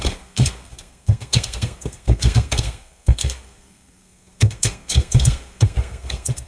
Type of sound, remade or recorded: remade